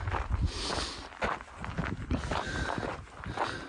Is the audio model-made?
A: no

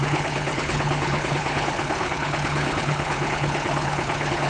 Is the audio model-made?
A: yes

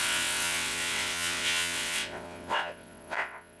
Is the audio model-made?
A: yes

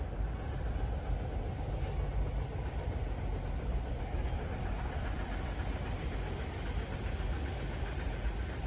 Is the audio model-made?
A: no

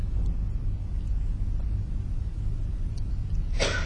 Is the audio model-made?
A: no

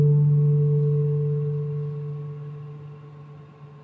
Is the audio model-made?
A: no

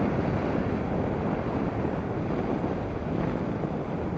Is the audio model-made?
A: no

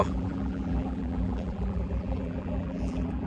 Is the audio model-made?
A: yes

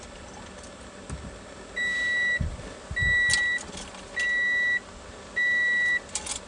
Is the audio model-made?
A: no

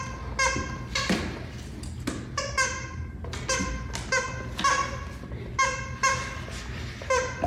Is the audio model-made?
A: no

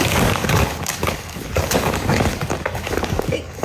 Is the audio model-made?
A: yes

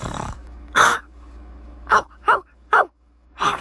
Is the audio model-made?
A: yes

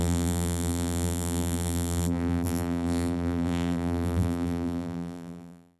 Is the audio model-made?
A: yes